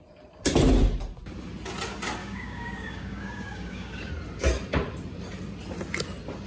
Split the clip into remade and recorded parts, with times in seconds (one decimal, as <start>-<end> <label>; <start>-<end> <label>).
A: 0.0-2.2 recorded; 2.2-4.1 remade; 4.1-6.5 recorded